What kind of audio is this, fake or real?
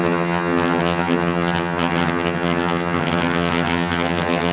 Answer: fake